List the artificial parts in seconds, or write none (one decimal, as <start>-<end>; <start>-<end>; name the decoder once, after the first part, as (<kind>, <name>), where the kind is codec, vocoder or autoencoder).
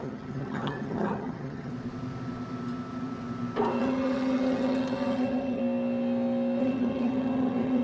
0.0-1.7 (vocoder, HiFi-GAN); 3.8-5.6; 6.6-7.8